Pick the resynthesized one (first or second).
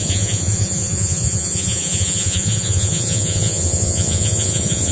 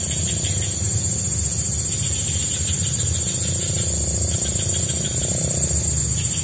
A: first